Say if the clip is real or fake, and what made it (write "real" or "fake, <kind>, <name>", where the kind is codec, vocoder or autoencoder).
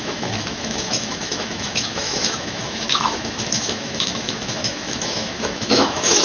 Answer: fake, autoencoder, DAC-VAE